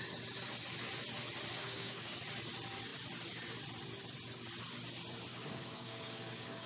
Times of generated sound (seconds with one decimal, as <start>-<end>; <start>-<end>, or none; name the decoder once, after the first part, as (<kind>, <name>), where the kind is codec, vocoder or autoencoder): 1.6-2.1 (codec, DAC); 5.3-6.7